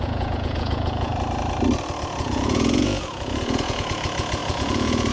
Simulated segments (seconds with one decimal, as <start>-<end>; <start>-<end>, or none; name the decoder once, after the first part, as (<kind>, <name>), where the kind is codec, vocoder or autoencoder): 0.0-1.1 (vocoder, Vocos); 2.1-5.1